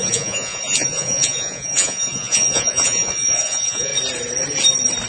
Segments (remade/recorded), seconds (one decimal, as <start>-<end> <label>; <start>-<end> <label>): 0.0-3.9 remade; 3.9-5.1 recorded